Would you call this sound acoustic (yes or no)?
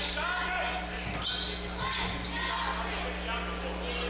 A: yes